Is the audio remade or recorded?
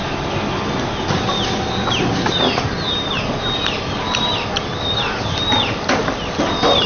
recorded